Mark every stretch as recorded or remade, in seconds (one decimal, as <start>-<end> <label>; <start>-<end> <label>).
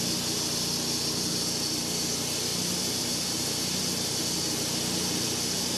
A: 0.0-2.5 recorded; 2.5-3.8 remade; 3.8-5.8 recorded